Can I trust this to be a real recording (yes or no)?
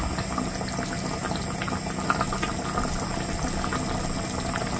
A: yes